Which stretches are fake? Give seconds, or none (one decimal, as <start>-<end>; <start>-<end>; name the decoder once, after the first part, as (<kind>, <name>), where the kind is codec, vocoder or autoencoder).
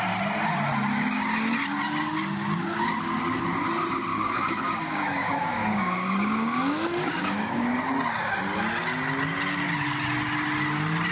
4.1-7.9 (codec, DAC)